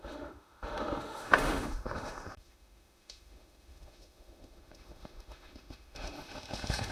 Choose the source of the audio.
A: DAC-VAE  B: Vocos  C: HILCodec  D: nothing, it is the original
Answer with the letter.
A